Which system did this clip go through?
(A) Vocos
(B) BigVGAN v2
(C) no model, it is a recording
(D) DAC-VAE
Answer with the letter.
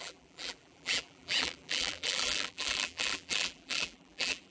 B